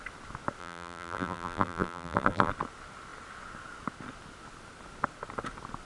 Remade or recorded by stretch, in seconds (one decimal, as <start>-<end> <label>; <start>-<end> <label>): 0.0-0.6 recorded; 0.6-2.5 remade; 2.5-5.9 recorded